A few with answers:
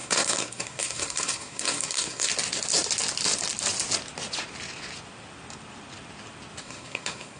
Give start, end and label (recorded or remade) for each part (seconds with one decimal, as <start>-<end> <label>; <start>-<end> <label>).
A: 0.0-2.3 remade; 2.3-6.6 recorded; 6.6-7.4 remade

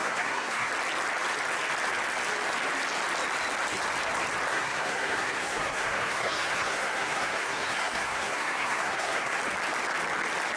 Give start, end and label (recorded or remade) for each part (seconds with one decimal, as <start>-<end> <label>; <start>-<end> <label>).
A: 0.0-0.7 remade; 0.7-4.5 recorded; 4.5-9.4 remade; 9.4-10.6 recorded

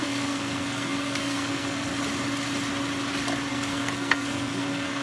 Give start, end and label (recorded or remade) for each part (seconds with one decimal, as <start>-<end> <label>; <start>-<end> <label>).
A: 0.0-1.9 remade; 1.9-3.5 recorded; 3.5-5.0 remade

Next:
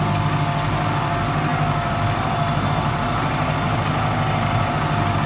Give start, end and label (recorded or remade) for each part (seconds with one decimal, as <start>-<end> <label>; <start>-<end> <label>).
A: 0.0-5.3 recorded

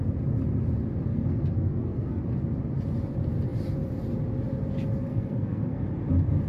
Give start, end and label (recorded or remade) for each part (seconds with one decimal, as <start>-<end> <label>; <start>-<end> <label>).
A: 0.0-1.1 recorded; 1.1-2.2 remade; 2.2-5.1 recorded; 5.1-5.9 remade; 5.9-6.5 recorded

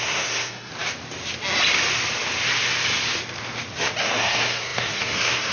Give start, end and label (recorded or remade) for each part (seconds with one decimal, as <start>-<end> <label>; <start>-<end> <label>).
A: 0.0-0.7 remade; 0.7-4.0 recorded; 4.0-5.5 remade

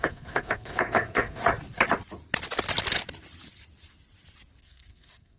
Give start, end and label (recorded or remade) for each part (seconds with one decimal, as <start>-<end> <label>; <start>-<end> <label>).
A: 0.0-1.4 remade; 1.4-4.6 recorded; 4.6-5.4 remade

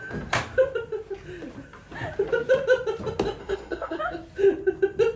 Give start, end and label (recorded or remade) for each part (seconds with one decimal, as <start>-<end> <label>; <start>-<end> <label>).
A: 0.0-3.4 recorded; 3.4-4.0 remade; 4.0-5.2 recorded